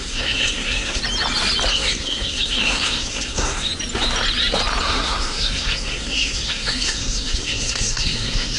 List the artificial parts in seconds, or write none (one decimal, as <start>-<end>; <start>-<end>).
0.0-1.0; 1.7-3.7; 4.8-8.6